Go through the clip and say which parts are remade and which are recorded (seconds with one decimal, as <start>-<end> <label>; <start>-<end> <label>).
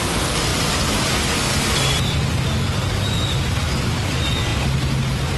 0.0-5.4 recorded